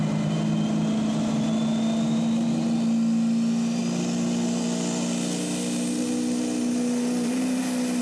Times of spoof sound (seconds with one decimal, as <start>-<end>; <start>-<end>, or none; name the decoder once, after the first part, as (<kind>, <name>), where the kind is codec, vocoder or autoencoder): none